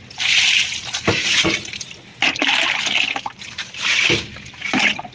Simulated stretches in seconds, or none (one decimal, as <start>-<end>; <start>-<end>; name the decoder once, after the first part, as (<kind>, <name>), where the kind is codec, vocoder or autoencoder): none

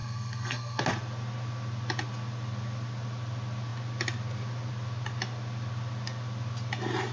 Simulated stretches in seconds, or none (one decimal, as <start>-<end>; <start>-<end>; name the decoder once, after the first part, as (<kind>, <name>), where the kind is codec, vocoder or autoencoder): 0.0-0.8 (codec, SNAC)

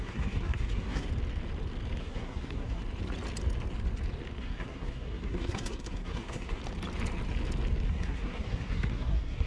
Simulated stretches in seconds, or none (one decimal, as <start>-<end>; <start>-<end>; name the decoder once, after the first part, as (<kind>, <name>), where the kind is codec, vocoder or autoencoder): 0.0-1.1 (codec, SNAC); 2.0-2.8; 4.4-6.6; 7.9-9.5

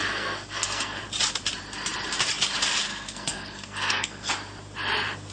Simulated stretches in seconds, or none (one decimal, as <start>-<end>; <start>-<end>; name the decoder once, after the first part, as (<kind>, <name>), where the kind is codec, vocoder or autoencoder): 0.0-1.0 (codec, SNAC); 2.9-4.3

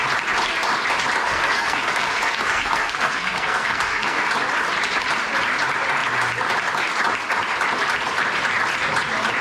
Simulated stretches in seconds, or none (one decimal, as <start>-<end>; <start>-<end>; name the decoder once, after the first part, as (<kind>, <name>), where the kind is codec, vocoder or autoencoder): 1.2-4.3 (codec, SNAC)

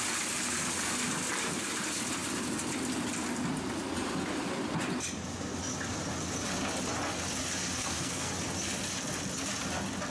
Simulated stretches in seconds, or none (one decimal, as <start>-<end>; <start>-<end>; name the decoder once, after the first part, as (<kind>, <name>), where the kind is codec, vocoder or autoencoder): 7.8-8.3 (codec, SNAC)

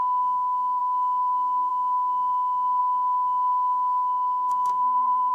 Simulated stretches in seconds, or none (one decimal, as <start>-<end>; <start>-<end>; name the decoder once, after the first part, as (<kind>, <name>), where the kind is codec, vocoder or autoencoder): 0.0-5.3 (codec, SNAC)